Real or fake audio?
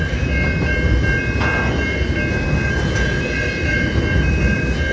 real